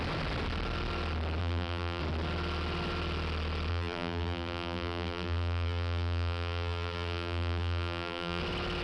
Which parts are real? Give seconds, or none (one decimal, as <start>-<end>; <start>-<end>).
0.0-1.4; 2.0-3.7; 8.4-8.8